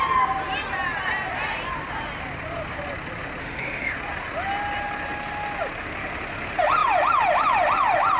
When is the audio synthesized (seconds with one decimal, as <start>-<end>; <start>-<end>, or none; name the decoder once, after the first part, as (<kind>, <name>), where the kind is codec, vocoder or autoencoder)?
3.4-3.9 (autoencoder, DAC-VAE)